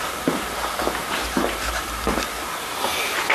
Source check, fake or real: real